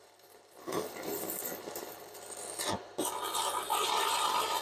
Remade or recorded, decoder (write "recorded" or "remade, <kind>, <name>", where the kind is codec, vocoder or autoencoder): recorded